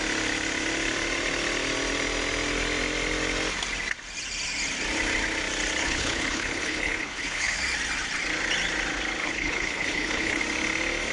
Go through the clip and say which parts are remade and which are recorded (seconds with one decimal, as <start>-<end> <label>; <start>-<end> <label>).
0.0-5.8 recorded; 5.8-7.6 remade; 7.6-9.2 recorded; 9.2-10.4 remade; 10.4-11.1 recorded